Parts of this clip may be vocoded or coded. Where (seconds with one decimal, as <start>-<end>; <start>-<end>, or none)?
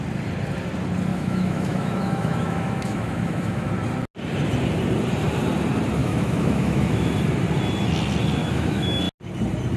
1.1-3.7; 6.0-7.1; 8.4-9.0